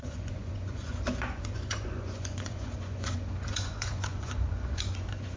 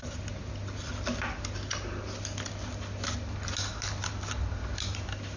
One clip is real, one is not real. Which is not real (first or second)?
first